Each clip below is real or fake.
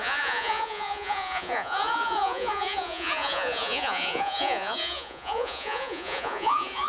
fake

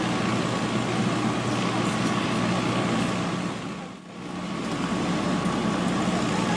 real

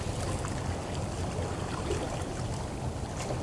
real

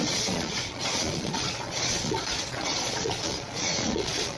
fake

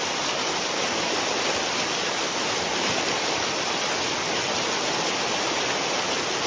real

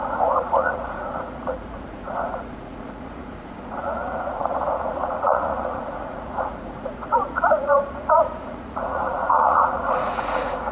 fake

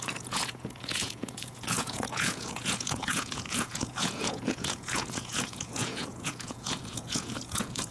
fake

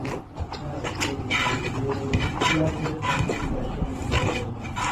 real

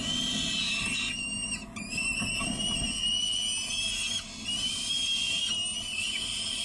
real